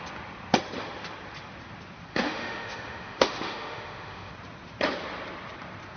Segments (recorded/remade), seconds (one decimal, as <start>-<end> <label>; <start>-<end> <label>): 0.0-2.1 recorded; 2.1-4.3 remade; 4.3-6.0 recorded